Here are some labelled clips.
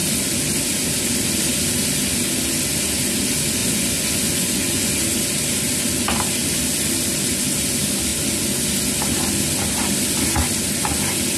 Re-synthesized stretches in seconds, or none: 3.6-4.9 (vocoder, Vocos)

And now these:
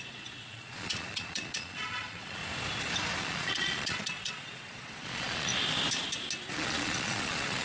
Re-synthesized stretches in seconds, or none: 0.0-2.4 (vocoder, Vocos); 3.2-5.5; 6.5-7.6

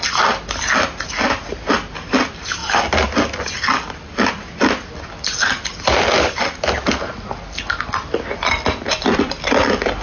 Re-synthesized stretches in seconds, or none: none

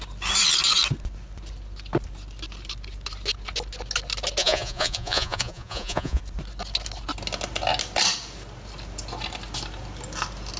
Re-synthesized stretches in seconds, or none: 4.4-6.2 (vocoder, Vocos)

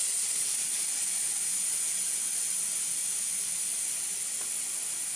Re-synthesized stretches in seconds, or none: 0.0-1.0 (vocoder, Vocos)

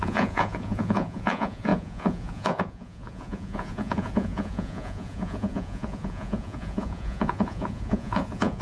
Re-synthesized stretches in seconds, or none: 0.0-8.6 (vocoder, Vocos)